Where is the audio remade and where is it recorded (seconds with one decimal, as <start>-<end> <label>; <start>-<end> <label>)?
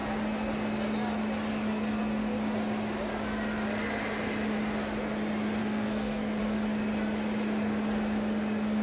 0.0-5.6 recorded; 5.6-6.4 remade; 6.4-8.8 recorded